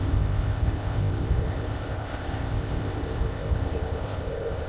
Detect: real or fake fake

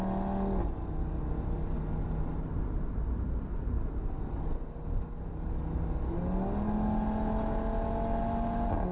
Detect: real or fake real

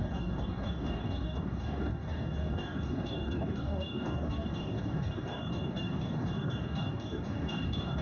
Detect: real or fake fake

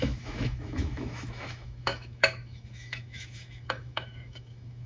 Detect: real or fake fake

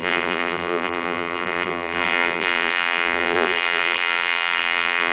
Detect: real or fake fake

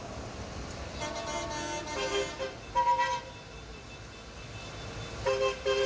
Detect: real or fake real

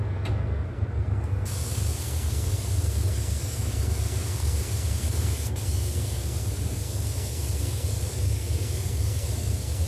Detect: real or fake fake